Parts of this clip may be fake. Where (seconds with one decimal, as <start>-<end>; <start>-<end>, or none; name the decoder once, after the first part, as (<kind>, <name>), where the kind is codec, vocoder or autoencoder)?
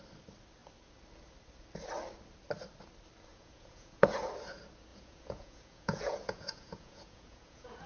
3.3-4.2 (vocoder, Vocos); 4.9-7.9